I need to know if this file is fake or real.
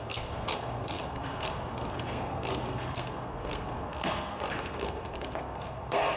fake